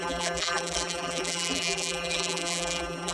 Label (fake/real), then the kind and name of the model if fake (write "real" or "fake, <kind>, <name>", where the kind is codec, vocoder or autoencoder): fake, vocoder, BigVGAN v2